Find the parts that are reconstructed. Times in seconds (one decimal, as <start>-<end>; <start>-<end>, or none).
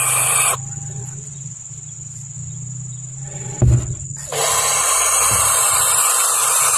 1.0-1.7